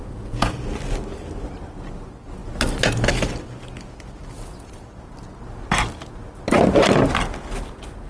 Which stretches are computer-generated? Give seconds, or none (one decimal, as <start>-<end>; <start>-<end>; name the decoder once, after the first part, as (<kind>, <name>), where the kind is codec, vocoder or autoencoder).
0.0-0.5 (vocoder, Vocos)